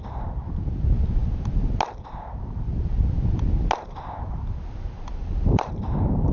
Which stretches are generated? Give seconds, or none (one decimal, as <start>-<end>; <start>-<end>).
5.2-5.7